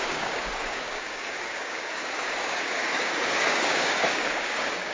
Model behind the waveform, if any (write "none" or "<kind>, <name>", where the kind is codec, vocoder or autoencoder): codec, DAC